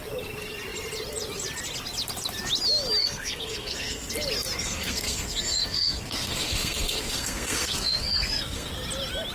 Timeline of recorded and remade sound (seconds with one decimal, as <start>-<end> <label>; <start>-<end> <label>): 0.0-3.0 recorded; 3.0-4.1 remade; 4.1-4.6 recorded; 4.6-8.7 remade; 8.7-9.3 recorded